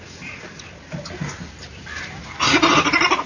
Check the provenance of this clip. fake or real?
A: real